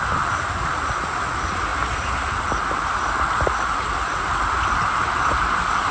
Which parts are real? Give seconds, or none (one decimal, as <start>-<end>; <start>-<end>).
0.0-5.9